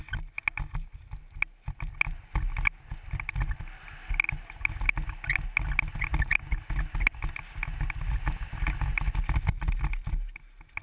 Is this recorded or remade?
recorded